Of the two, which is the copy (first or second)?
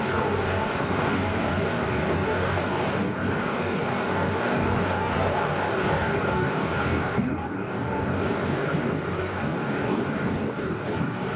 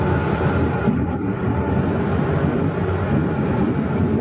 first